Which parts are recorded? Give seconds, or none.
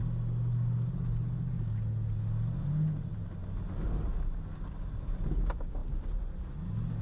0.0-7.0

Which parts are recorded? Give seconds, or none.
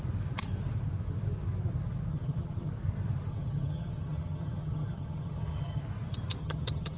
0.0-2.1; 2.7-3.3; 5.8-6.4